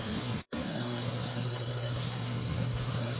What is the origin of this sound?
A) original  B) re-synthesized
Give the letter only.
B